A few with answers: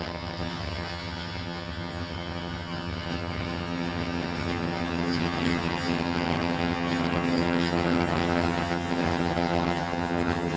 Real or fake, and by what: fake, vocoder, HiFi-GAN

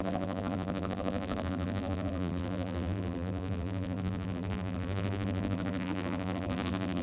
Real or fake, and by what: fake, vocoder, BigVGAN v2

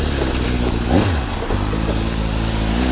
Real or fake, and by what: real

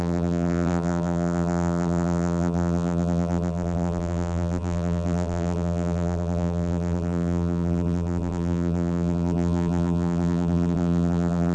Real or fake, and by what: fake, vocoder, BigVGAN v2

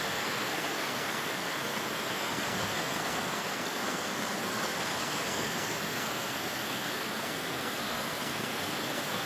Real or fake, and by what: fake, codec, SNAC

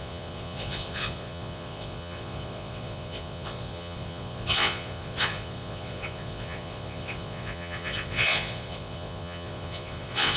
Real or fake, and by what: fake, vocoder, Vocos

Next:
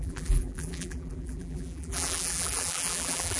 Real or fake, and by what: fake, vocoder, BigVGAN v2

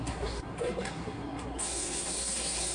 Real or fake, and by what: fake, codec, SNAC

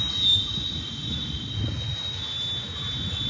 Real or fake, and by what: real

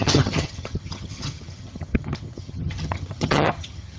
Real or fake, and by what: fake, vocoder, HiFi-GAN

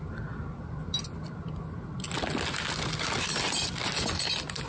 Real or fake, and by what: real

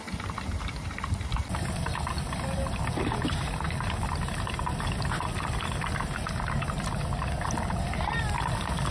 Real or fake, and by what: real